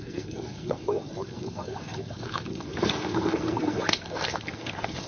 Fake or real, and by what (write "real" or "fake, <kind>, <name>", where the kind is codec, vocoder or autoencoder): fake, codec, SNAC